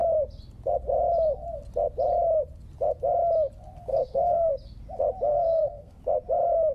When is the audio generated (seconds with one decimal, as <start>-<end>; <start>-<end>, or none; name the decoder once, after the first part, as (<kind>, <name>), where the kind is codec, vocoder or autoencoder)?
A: 3.9-4.5 (codec, SNAC); 5.3-6.0